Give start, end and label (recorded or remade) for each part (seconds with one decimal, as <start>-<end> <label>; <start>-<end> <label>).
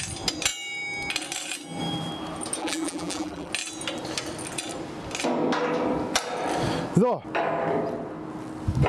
0.0-2.6 recorded; 2.6-3.5 remade; 3.5-8.9 recorded